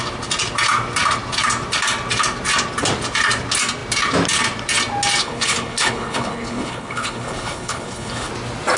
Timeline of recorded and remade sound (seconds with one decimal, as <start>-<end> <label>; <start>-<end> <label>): 0.0-5.2 recorded; 5.2-8.3 remade; 8.3-8.8 recorded